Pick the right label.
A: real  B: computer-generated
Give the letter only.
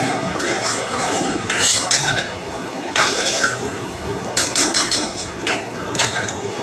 B